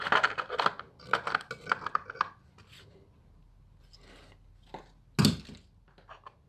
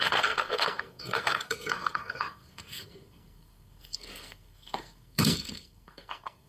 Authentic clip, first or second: first